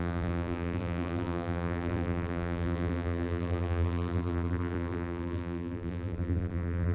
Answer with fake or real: fake